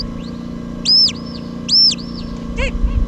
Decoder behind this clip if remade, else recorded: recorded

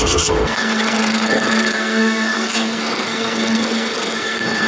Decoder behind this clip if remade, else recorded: remade, codec, SNAC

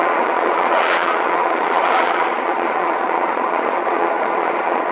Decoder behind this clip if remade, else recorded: remade, vocoder, Vocos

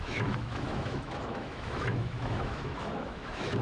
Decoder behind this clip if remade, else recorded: remade, autoencoder, DAC-VAE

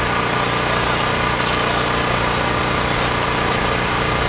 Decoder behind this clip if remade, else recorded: recorded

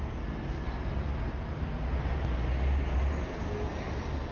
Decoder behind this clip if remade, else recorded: recorded